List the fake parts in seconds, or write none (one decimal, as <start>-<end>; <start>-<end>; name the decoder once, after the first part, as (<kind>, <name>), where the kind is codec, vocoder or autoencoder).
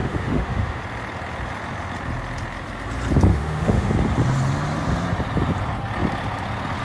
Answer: 0.0-0.8 (autoencoder, DAC-VAE); 3.3-3.9